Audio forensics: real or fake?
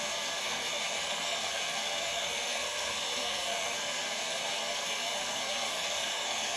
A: fake